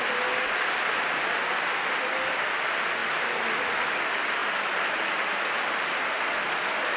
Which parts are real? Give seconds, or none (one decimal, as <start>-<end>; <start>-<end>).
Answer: 0.0-7.0